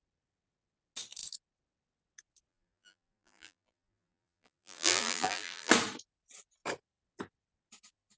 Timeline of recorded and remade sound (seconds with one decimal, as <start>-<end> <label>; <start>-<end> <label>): 0.0-2.5 recorded; 2.5-5.7 remade; 5.7-8.2 recorded